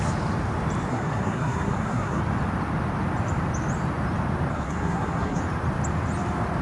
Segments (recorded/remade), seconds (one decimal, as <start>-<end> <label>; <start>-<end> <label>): 0.0-0.9 recorded; 0.9-2.2 remade; 2.2-4.5 recorded; 4.5-5.4 remade; 5.4-6.6 recorded